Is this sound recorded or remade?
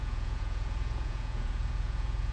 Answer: remade